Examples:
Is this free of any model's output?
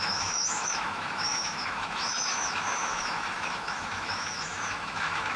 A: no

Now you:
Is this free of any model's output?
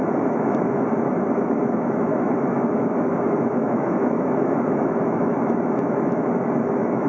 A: no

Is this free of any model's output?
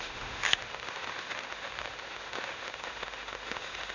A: no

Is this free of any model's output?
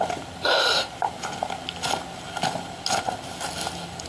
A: yes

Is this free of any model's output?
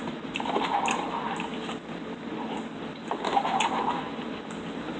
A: yes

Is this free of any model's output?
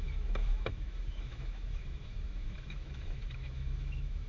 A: no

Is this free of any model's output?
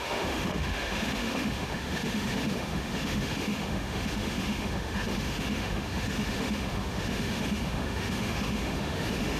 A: no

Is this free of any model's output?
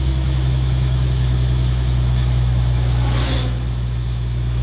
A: no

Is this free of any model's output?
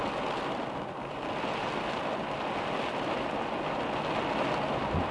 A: yes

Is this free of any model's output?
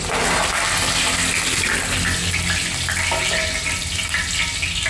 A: yes